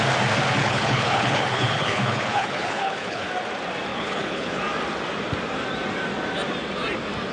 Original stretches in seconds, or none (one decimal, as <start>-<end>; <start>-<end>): 0.0-0.6; 3.3-3.9; 4.6-7.3